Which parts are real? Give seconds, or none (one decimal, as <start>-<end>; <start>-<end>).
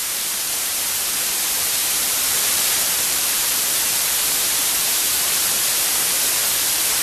0.9-1.8; 6.0-7.0